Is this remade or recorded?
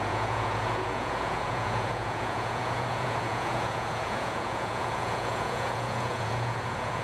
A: remade